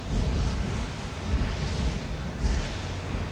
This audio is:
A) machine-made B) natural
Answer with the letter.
B